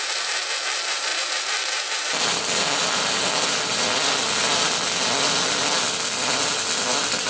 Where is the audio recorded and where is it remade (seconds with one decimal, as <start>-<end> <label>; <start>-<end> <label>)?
0.0-7.3 recorded